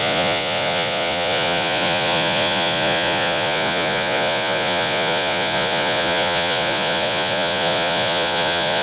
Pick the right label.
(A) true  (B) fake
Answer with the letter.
B